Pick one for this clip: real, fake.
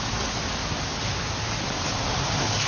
real